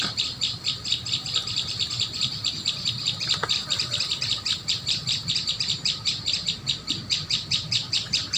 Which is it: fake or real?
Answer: fake